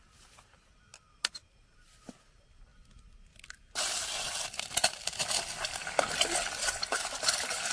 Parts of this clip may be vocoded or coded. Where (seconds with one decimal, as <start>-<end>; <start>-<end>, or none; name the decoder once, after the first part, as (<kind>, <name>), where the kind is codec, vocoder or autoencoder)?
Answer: none